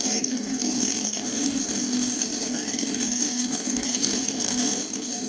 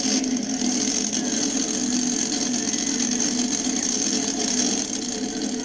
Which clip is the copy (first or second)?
first